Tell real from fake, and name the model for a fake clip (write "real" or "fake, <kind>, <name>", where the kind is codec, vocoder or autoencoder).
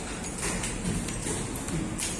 real